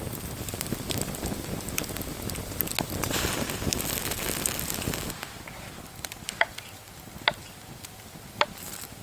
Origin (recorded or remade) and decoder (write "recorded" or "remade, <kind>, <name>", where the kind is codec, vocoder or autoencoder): recorded